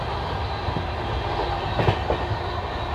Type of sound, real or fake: real